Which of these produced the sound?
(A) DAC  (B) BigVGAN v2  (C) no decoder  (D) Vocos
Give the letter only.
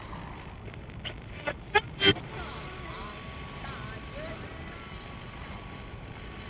C